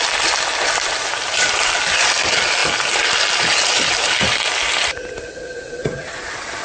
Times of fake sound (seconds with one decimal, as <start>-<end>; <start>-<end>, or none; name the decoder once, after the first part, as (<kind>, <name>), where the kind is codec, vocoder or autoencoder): none